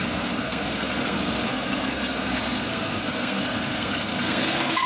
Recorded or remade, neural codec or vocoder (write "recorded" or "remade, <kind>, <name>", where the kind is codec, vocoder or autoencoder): remade, codec, SNAC